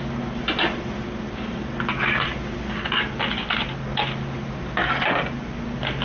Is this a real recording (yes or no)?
yes